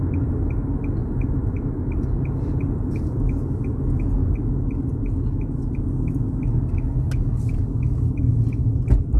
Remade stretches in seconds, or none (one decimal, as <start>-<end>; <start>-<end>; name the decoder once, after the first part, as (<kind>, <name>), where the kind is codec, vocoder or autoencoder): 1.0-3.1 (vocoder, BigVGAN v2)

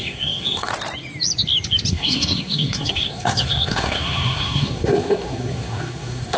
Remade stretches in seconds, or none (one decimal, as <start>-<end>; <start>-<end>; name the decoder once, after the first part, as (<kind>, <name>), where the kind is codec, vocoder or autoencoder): 0.0-0.7 (codec, SNAC); 1.9-6.4

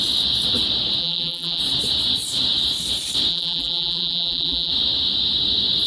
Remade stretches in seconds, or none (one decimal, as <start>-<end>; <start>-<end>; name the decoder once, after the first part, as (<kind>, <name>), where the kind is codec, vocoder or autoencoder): 1.0-1.6 (vocoder, BigVGAN v2); 3.3-4.7